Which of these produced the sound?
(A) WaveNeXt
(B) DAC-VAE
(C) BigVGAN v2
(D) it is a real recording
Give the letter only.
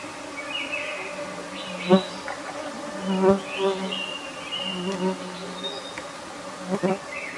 D